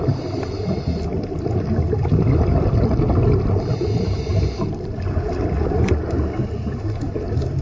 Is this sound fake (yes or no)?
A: no